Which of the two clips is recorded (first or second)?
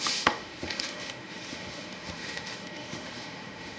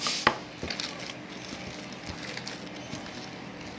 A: second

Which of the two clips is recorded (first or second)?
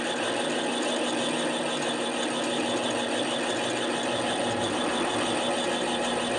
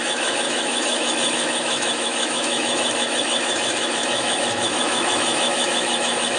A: first